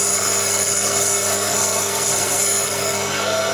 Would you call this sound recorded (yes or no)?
no